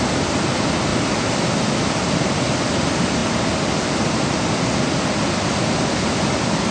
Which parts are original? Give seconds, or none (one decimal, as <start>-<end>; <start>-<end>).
0.0-6.7